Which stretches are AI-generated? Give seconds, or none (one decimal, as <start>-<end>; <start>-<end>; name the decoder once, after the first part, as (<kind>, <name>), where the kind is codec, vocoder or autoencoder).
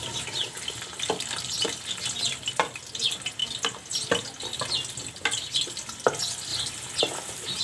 none